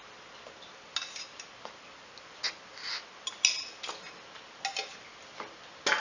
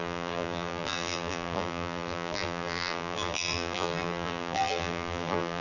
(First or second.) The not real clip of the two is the second